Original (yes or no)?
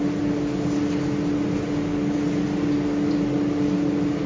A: yes